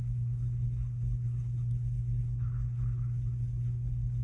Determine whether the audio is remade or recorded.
remade